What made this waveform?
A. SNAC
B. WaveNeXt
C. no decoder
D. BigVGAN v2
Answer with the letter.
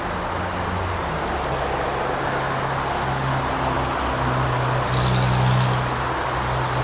C